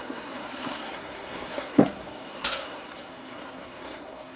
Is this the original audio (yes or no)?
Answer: no